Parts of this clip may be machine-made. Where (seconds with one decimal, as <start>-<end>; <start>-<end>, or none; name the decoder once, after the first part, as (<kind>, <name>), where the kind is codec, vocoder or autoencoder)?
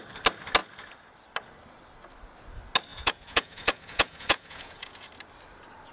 2.9-5.1 (vocoder, Vocos)